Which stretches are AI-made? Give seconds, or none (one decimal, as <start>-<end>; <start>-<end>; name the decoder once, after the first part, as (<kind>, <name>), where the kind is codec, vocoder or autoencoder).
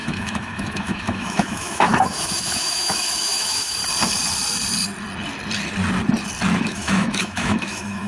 0.0-3.8 (autoencoder, DAC-VAE); 6.6-8.1